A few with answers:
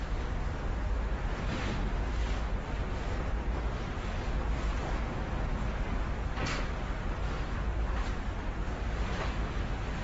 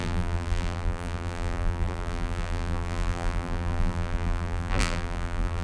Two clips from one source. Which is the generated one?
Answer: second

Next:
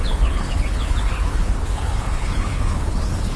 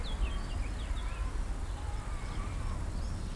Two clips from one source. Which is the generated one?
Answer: first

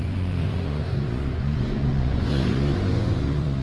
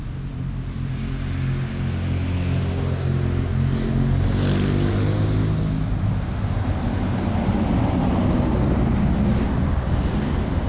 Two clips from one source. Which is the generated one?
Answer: first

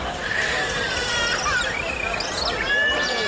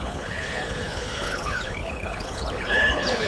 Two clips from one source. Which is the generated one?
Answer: second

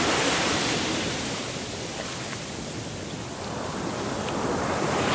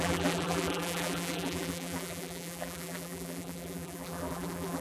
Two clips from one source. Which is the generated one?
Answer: second